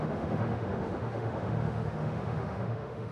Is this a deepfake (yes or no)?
yes